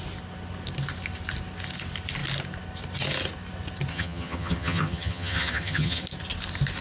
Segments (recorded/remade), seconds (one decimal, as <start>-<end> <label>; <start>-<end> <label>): 0.0-3.9 recorded; 3.9-6.0 remade; 6.0-6.8 recorded